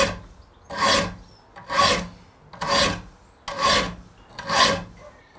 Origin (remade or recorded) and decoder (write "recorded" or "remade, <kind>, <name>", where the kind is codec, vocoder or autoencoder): recorded